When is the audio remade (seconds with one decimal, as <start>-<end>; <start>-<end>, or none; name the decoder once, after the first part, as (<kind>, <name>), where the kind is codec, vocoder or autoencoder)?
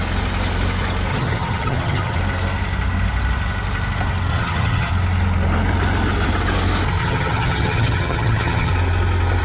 1.1-2.2 (vocoder, HiFi-GAN); 4.3-4.9; 7.0-8.7